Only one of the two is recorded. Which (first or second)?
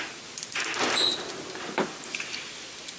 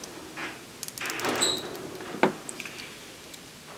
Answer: second